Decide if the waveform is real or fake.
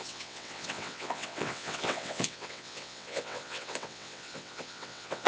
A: fake